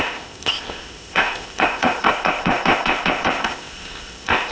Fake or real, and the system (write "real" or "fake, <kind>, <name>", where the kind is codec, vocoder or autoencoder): fake, codec, ZipCodec